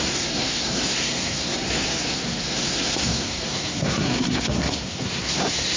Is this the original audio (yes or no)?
no